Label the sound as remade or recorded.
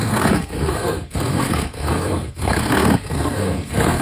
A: remade